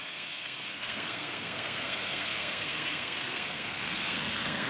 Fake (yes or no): yes